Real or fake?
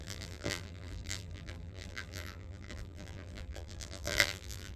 fake